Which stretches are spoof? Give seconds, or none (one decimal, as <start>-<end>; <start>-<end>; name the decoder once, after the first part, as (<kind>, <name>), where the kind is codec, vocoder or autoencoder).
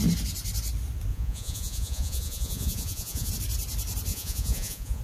1.1-3.3 (vocoder, Vocos); 4.1-5.0